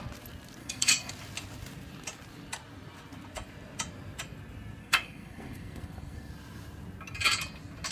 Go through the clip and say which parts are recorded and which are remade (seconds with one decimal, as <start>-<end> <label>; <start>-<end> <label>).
0.0-0.6 recorded; 0.6-1.1 remade; 1.1-4.8 recorded; 4.8-6.3 remade; 6.3-7.9 recorded